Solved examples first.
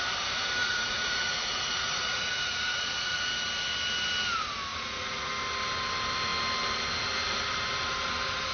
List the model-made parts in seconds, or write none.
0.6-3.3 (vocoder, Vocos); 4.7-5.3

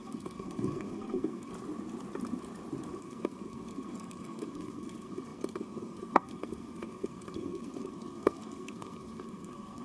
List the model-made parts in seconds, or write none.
0.0-1.5 (codec, SNAC); 3.0-9.8